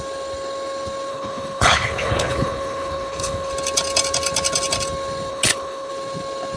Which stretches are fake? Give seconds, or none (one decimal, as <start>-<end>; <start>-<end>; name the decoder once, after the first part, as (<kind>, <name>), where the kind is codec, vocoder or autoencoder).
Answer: 1.1-3.5 (codec, HILCodec); 5.3-5.9